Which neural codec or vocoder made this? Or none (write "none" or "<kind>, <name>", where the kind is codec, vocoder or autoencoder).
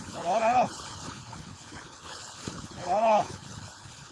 codec, HILCodec